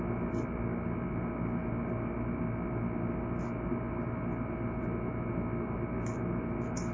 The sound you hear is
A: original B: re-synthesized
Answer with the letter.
A